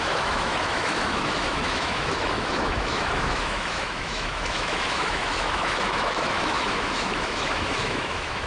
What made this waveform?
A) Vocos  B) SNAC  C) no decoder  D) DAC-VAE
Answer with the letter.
D